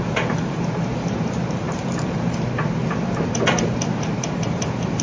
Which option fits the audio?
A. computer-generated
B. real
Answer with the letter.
A